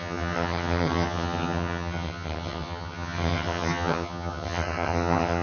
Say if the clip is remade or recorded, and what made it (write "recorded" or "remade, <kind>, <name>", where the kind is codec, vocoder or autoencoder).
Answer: remade, vocoder, HiFi-GAN